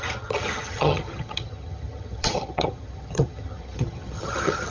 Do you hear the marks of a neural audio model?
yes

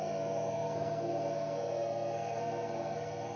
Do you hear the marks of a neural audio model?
yes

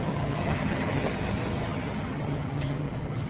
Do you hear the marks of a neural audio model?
yes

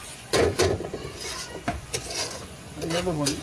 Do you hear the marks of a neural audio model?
yes